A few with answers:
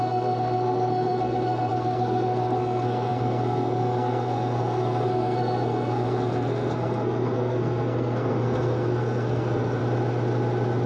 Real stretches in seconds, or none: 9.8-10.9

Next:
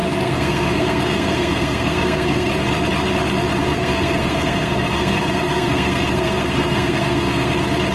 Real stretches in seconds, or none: 2.5-3.6; 7.5-7.9

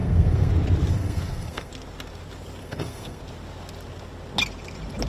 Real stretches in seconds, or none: 0.5-0.9; 1.7-2.6; 3.2-5.1

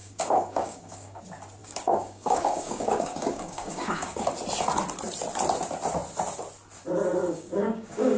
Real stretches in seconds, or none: 1.2-1.6; 4.3-7.2

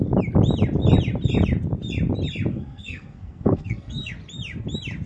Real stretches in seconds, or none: 0.0-2.5; 4.1-5.1